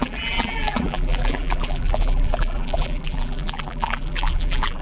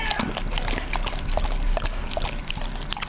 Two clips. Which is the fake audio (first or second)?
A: first